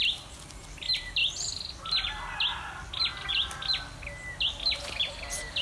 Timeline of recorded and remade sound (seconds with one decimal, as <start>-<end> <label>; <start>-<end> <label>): 0.0-1.2 remade; 1.2-4.6 recorded; 4.6-5.6 remade